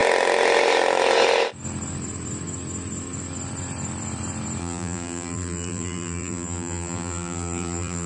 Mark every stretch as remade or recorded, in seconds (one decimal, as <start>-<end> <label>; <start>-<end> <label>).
0.0-4.6 recorded; 4.6-8.1 remade